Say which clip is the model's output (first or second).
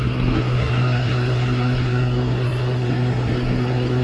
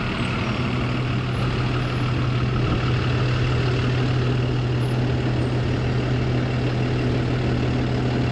first